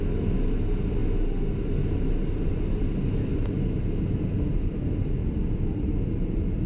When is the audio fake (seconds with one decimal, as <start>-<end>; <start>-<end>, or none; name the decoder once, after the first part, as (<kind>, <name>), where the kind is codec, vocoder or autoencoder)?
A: 5.2-6.0 (vocoder, BigVGAN v2)